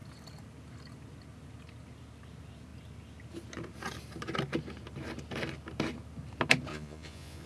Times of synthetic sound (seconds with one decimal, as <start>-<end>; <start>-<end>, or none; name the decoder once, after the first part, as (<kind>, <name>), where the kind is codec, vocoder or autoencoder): 6.7-7.5 (vocoder, Vocos)